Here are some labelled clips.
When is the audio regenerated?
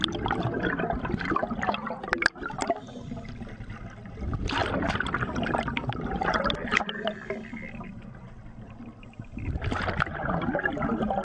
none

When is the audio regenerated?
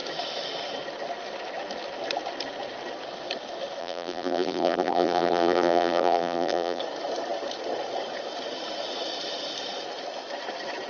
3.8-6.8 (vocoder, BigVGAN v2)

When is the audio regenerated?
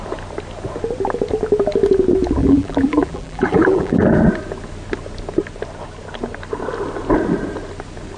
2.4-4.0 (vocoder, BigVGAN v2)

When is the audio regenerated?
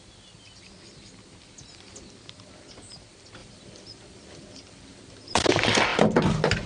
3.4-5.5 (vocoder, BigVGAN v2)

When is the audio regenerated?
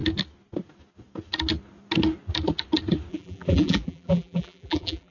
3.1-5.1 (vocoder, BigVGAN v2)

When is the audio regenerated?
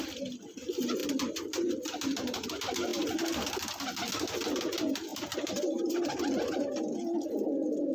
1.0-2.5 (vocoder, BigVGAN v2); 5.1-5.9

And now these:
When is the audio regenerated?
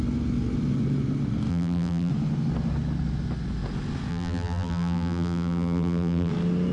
1.5-2.1 (vocoder, BigVGAN v2); 4.1-6.3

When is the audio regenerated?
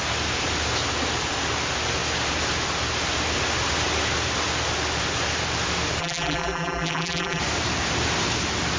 6.0-7.4 (vocoder, BigVGAN v2)